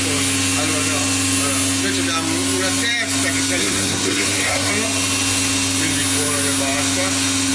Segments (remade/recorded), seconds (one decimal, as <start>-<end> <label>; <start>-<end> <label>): 0.0-3.6 recorded; 3.6-4.7 remade; 4.7-7.5 recorded